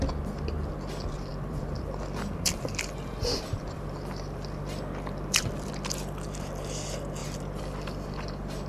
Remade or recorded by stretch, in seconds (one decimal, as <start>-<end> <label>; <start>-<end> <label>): 0.0-1.3 recorded; 1.3-5.7 remade; 5.7-7.2 recorded; 7.2-8.7 remade